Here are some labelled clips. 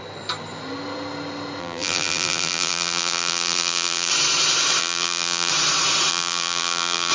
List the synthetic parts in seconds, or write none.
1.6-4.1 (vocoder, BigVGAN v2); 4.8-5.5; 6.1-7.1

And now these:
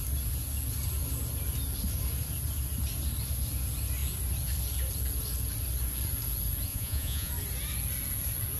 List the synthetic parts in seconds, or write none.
6.7-7.3 (vocoder, Vocos)

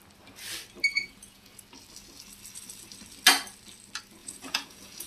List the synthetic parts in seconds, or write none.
0.9-1.6 (vocoder, Vocos); 4.2-5.1

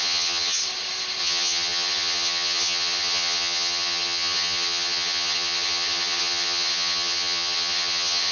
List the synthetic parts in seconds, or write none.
0.0-0.6 (vocoder, HiFi-GAN); 1.2-8.3

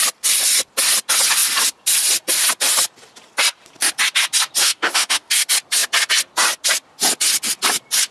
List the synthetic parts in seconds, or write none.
4.6-5.3 (autoencoder, DAC-VAE)

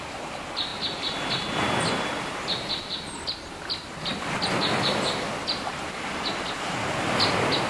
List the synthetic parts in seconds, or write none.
none

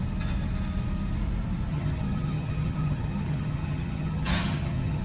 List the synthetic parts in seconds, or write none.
1.7-5.0 (vocoder, HiFi-GAN)

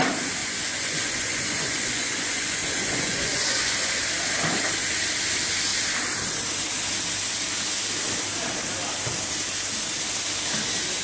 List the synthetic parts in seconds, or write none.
0.4-4.0 (vocoder, Vocos)